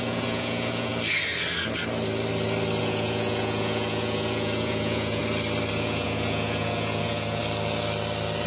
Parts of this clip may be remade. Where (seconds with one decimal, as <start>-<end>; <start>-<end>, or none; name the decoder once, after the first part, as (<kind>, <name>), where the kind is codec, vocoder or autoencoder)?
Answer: 0.0-0.9 (vocoder, Vocos); 2.8-5.2; 5.7-7.4